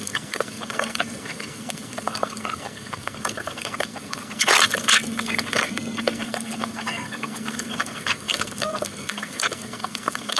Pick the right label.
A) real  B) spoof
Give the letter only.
B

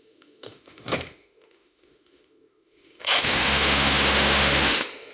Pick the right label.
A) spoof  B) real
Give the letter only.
A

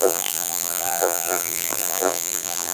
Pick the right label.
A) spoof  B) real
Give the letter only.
A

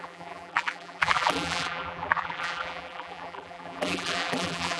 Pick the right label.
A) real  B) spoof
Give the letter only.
B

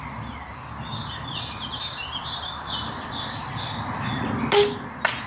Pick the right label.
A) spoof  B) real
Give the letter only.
B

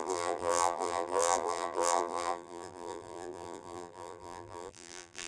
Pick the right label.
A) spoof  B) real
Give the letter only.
A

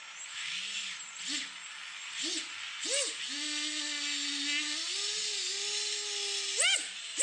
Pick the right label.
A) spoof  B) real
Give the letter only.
B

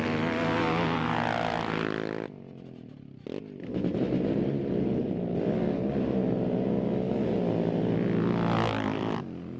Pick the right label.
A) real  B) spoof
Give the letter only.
A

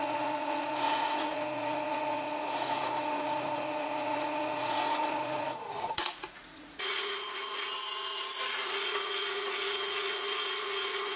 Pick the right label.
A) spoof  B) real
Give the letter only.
A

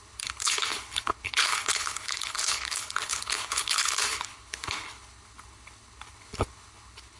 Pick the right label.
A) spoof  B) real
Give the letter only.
A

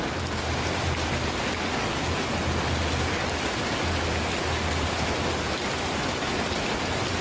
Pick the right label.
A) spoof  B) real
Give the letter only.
B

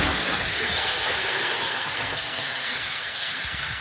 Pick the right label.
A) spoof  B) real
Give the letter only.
A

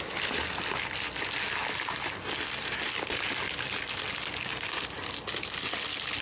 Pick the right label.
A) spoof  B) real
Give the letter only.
B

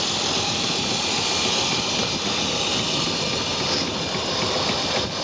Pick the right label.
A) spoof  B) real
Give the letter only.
B